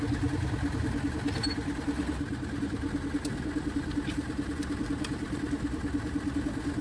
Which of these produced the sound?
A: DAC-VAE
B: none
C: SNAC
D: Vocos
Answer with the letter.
B